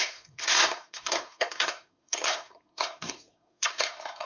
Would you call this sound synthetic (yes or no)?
yes